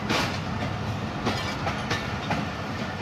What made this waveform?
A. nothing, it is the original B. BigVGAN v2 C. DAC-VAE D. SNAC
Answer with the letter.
A